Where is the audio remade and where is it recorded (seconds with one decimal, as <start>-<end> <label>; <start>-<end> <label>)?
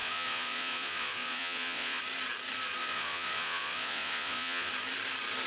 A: 0.0-2.0 remade; 2.0-2.8 recorded; 2.8-4.7 remade; 4.7-5.5 recorded